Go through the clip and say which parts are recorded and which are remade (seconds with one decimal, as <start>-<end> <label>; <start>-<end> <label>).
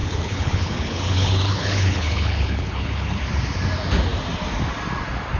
0.0-3.2 remade; 3.2-5.4 recorded